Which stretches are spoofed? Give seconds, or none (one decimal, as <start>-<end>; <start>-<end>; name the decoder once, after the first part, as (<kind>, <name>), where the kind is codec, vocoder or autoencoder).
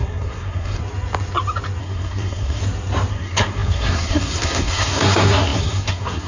0.0-0.8 (codec, SNAC); 1.8-2.6; 3.1-6.3